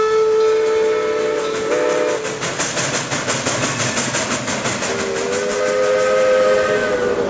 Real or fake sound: real